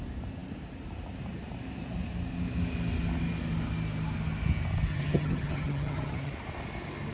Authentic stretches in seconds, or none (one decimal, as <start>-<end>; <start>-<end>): 0.0-4.9; 6.3-7.1